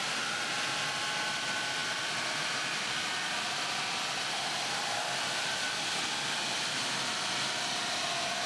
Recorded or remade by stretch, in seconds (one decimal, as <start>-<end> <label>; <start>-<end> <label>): 0.0-1.8 recorded; 1.8-6.7 remade; 6.7-8.5 recorded